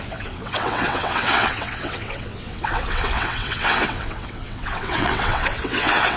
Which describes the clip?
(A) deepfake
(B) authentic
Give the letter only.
A